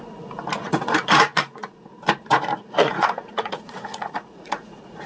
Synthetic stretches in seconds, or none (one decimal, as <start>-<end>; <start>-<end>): 0.6-1.7; 2.3-5.1